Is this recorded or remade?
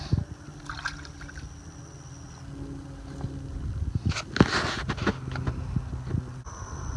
recorded